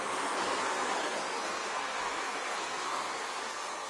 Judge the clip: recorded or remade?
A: remade